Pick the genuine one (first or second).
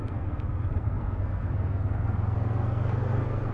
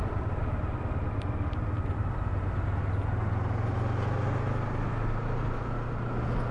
second